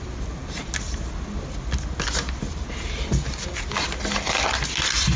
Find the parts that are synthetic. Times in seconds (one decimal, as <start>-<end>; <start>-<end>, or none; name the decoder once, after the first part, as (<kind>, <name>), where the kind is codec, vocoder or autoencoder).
none